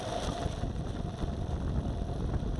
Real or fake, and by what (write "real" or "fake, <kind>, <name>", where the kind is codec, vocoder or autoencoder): fake, vocoder, BigVGAN v2